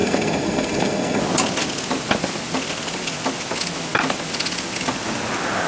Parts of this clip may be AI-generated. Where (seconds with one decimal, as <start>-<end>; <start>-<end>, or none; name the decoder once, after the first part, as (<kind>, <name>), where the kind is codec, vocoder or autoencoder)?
0.0-1.2 (codec, SNAC)